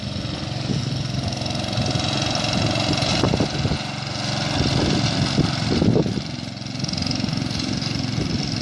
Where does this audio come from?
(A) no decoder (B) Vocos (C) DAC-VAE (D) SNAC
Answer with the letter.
A